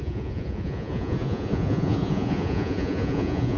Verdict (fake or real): fake